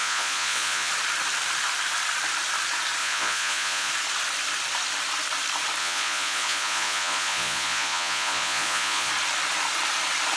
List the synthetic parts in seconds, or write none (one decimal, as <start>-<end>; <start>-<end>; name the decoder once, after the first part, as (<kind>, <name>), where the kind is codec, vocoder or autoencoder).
0.0-0.9 (vocoder, Vocos); 3.0-3.9; 5.8-9.1